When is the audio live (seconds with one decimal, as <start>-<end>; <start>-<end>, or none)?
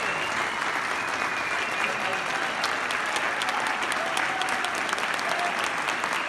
0.0-6.3